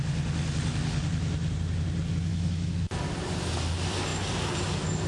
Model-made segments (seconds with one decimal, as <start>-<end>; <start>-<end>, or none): 2.3-3.0